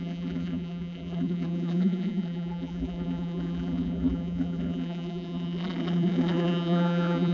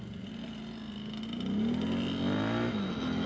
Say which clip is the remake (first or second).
first